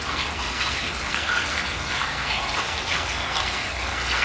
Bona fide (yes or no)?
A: no